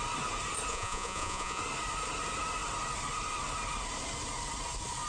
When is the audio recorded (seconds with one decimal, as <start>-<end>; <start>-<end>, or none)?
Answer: 0.0-0.7; 1.6-5.1